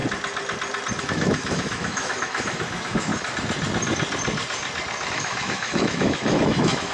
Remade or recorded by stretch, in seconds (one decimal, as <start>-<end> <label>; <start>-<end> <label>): 0.0-1.0 recorded; 1.0-3.1 remade; 3.1-5.1 recorded; 5.1-6.9 remade